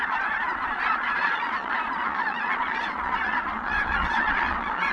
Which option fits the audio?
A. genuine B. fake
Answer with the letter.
B